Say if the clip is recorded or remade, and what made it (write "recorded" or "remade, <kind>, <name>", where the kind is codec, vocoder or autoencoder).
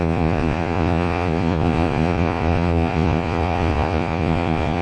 remade, vocoder, Vocos